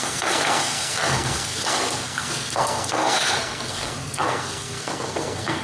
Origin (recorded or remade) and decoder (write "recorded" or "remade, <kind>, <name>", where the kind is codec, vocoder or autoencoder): remade, codec, SNAC